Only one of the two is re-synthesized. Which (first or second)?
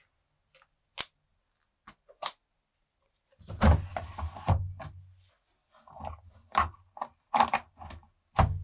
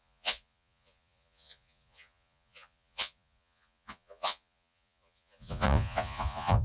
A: second